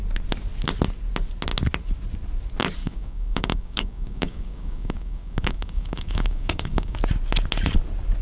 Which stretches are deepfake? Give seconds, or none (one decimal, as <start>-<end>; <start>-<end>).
2.8-7.0